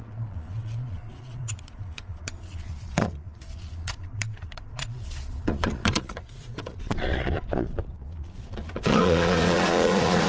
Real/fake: fake